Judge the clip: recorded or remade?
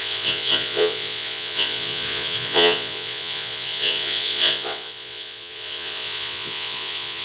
remade